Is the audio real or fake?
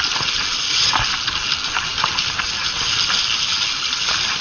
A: real